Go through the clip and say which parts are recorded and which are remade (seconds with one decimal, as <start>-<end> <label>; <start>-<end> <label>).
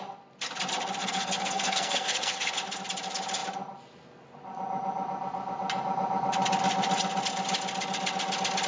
0.0-1.0 recorded; 1.0-2.5 remade; 2.5-8.7 recorded